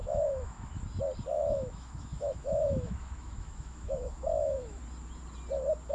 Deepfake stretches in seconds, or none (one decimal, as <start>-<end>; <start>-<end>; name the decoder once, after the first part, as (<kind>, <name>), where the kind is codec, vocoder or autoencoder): 0.0-0.8 (autoencoder, DAC-VAE); 1.3-4.8